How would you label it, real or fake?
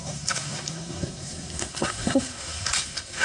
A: fake